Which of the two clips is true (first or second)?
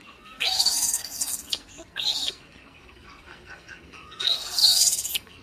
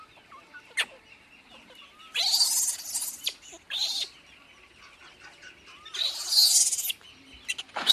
second